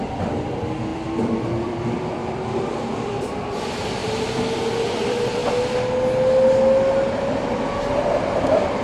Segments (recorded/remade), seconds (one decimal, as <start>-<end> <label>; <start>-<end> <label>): 0.0-4.0 remade; 4.0-4.7 recorded; 4.7-5.4 remade; 5.4-7.9 recorded; 7.9-8.8 remade